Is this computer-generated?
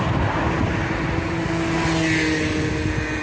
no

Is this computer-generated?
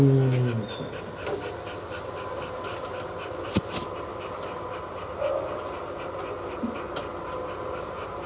no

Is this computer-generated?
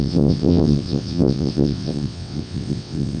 yes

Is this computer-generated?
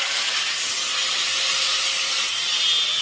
no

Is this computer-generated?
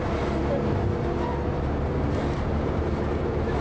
no